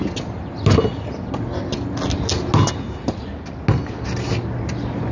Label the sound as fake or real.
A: real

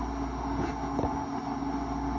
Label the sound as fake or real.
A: real